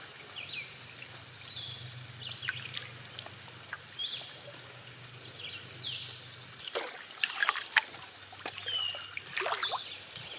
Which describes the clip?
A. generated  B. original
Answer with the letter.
B